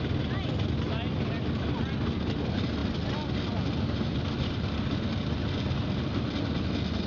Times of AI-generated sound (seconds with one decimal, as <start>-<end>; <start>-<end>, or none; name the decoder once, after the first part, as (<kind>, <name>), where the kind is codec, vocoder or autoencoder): none